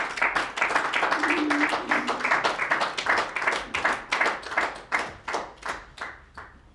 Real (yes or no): yes